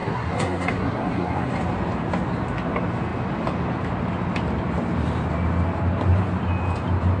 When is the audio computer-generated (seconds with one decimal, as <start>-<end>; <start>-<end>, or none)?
0.0-1.5

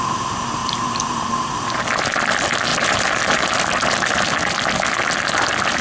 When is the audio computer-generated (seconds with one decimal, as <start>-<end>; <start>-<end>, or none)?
0.6-1.5; 2.7-3.6

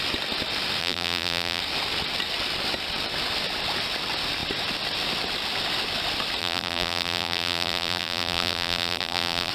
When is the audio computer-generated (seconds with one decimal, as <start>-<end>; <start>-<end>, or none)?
0.8-1.6; 6.4-9.5